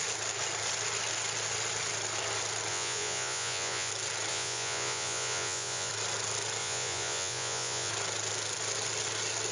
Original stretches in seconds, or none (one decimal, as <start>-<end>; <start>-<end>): 0.0-2.7; 3.9-4.3; 5.9-6.6; 7.9-9.5